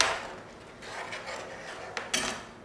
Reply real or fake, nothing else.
real